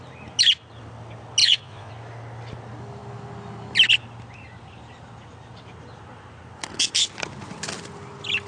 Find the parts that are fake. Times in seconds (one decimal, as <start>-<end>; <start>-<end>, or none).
1.4-1.9